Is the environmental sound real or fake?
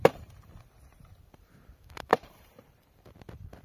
fake